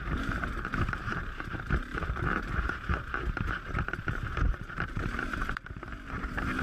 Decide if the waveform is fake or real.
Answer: fake